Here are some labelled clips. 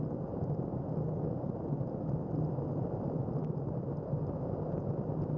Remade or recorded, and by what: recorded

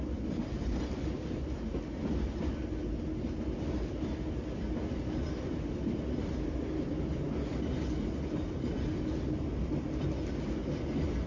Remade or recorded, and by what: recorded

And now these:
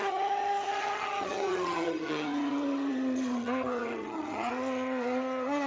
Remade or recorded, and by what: remade, vocoder, HiFi-GAN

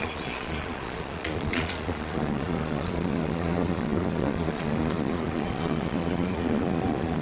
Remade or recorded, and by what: remade, vocoder, Vocos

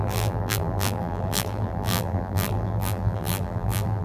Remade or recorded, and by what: remade, vocoder, BigVGAN v2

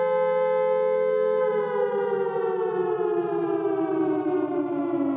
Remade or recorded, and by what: recorded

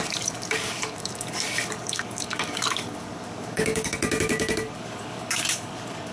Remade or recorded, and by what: remade, codec, DAC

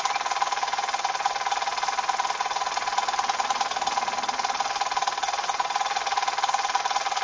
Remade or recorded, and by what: recorded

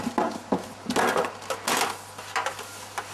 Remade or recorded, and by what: recorded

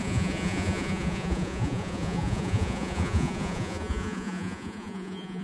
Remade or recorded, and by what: remade, vocoder, Vocos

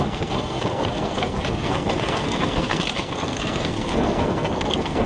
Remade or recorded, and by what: remade, codec, SNAC